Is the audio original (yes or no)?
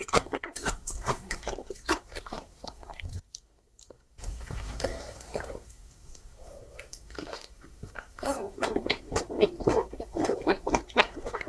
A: no